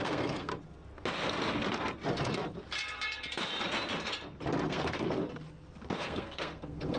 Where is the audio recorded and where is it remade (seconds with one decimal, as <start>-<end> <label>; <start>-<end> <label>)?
0.0-0.5 remade; 0.5-4.7 recorded; 4.7-5.2 remade; 5.2-6.0 recorded; 6.0-7.0 remade